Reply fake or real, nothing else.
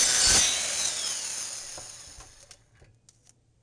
real